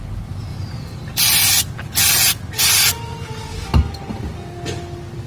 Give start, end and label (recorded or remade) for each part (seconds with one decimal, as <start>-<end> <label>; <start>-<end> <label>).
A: 0.0-0.5 recorded; 0.5-1.4 remade; 1.4-5.3 recorded